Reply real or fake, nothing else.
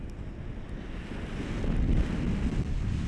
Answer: real